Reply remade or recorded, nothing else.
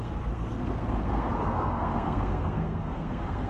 remade